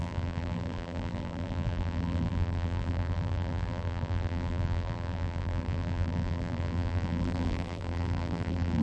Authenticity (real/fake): fake